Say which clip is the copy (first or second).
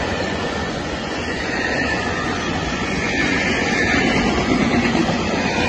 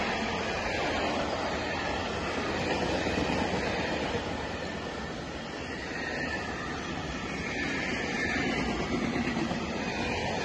first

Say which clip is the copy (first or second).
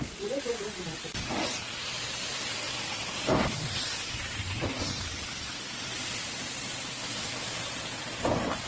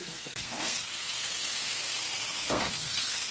second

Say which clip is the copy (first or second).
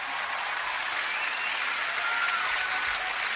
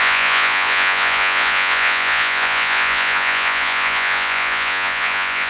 second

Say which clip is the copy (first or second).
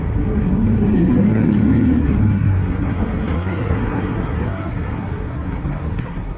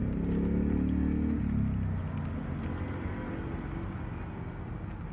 first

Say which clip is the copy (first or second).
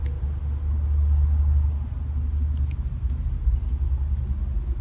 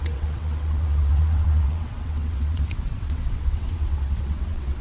second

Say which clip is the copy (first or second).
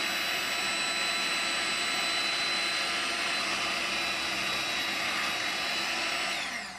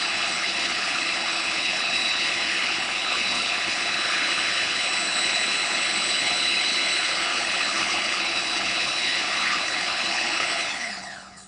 second